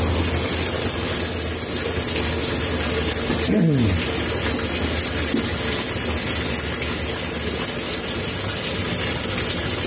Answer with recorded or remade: recorded